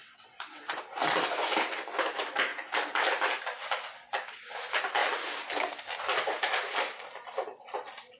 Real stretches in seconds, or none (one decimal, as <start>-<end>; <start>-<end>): 0.8-8.2